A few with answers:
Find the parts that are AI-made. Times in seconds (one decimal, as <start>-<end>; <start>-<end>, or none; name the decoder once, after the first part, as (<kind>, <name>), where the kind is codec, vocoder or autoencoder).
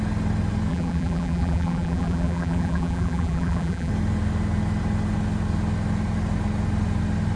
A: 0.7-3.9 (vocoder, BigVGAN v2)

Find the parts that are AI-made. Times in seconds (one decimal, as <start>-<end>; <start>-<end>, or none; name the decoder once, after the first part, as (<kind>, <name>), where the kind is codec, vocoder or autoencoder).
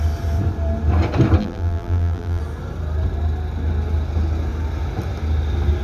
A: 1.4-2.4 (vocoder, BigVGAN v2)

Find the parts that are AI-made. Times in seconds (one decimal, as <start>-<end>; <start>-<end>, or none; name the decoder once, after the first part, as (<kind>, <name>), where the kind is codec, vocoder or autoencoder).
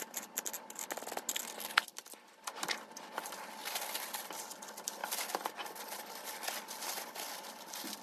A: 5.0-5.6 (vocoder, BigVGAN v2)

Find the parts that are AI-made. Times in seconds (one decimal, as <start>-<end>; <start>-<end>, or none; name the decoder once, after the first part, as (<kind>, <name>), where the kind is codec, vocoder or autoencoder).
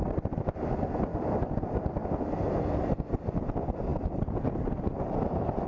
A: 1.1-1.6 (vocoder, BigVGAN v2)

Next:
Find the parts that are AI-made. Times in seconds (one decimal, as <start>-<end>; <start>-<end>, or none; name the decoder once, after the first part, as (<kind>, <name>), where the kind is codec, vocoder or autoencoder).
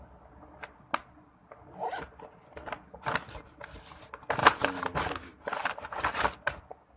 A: 4.4-5.1 (vocoder, BigVGAN v2); 5.6-6.2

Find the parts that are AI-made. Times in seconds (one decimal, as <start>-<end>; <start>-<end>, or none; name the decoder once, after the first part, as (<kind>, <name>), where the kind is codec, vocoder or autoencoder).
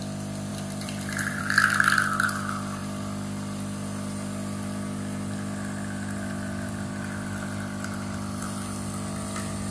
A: 0.5-1.4 (vocoder, BigVGAN v2)